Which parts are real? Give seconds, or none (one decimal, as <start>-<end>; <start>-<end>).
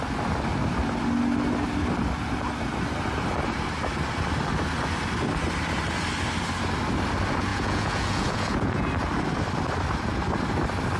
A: 0.0-7.5; 8.9-11.0